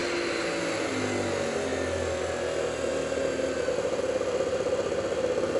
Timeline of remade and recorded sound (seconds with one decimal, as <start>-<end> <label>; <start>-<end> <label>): 0.0-5.6 recorded